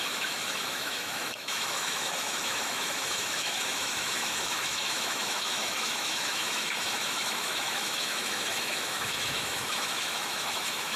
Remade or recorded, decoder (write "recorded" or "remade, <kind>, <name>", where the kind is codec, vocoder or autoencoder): remade, autoencoder, DAC-VAE